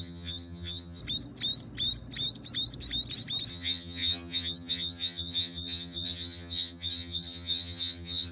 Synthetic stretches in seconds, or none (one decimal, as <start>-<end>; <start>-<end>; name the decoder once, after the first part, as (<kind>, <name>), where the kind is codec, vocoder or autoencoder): 0.0-1.0 (vocoder, HiFi-GAN); 3.5-8.3